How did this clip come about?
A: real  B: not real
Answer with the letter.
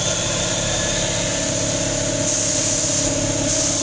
A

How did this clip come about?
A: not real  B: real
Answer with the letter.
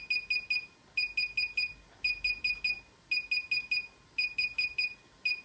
B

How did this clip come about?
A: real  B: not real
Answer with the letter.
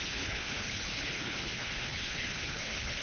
B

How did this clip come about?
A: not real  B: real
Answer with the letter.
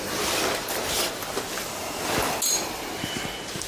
B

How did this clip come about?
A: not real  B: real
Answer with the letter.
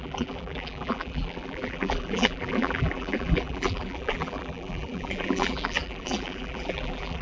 A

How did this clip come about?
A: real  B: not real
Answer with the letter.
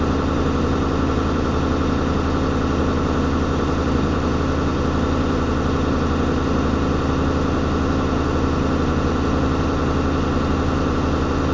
A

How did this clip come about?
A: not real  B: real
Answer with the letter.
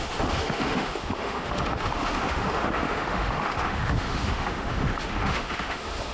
A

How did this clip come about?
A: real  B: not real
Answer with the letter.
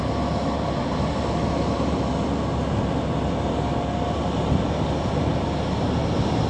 A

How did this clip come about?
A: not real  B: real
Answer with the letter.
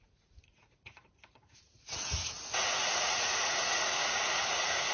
A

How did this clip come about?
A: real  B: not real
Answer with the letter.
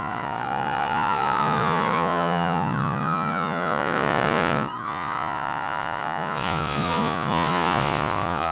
B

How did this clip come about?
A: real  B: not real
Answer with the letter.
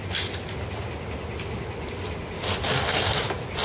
A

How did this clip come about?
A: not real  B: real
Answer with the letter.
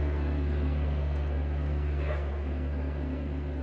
A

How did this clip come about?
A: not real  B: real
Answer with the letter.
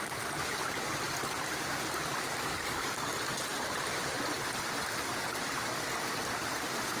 B